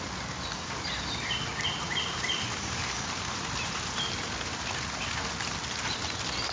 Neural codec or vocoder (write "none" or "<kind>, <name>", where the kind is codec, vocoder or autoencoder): none